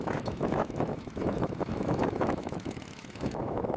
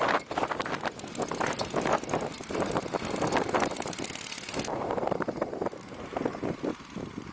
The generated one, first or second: first